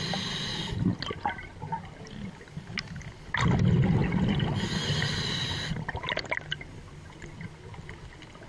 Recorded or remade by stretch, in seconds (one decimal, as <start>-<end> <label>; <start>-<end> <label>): 0.0-8.5 recorded